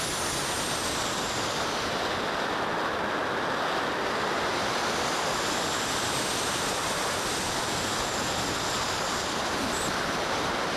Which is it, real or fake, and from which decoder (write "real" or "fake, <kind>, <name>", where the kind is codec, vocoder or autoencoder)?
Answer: real